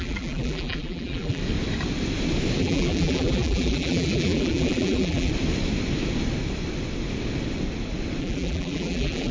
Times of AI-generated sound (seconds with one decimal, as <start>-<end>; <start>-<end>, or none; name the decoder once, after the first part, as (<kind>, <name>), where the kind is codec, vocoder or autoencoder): 0.0-1.4 (vocoder, BigVGAN v2); 2.6-5.3; 8.2-9.3